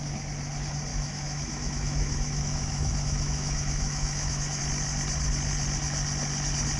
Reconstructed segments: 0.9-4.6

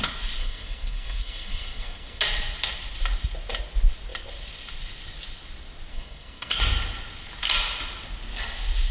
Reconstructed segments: 0.4-2.2; 5.9-6.6

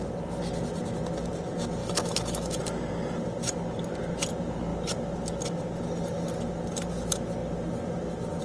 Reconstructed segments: 1.8-2.6

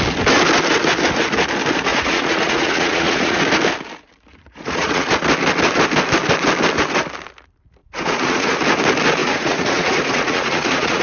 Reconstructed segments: 1.9-3.4; 4.3-5.1; 7.8-8.6; 9.2-11.0

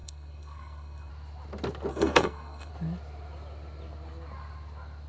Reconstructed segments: 0.0-1.1; 1.9-2.7

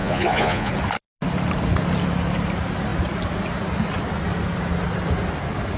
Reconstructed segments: 0.0-0.7